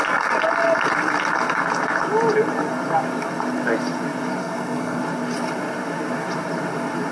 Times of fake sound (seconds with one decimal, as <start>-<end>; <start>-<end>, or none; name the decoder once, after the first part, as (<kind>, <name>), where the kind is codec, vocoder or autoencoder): 4.4-5.0 (codec, SNAC)